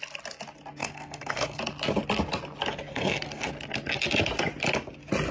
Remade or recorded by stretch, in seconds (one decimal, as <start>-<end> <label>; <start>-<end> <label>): 0.0-0.8 recorded; 0.8-1.6 remade; 1.6-2.9 recorded; 2.9-3.5 remade; 3.5-5.3 recorded